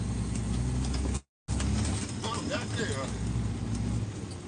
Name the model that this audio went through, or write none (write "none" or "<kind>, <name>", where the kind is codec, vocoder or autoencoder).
none